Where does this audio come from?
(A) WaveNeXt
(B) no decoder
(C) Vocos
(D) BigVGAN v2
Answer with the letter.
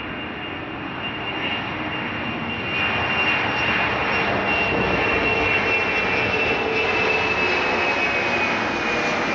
B